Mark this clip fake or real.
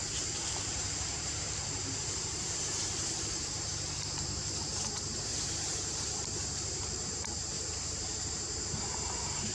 fake